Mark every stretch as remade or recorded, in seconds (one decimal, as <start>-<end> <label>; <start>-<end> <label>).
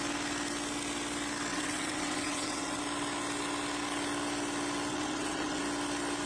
0.0-1.5 recorded; 1.5-2.8 remade; 2.8-4.9 recorded; 4.9-5.6 remade; 5.6-6.3 recorded